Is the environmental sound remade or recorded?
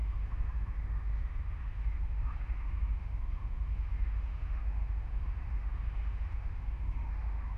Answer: remade